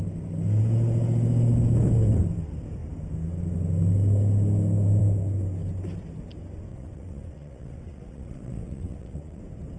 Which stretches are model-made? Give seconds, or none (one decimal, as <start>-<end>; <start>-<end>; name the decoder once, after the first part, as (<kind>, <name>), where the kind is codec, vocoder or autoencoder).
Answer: 6.7-9.4 (vocoder, WaveNeXt)